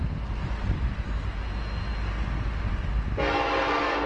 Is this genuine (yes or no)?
yes